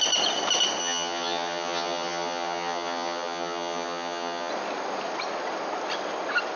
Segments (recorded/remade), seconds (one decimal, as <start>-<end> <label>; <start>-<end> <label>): 0.0-0.8 recorded; 0.8-4.5 remade; 4.5-6.6 recorded